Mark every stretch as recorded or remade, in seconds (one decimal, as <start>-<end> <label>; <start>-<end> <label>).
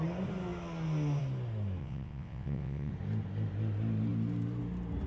0.0-1.8 recorded; 1.8-2.9 remade; 2.9-5.1 recorded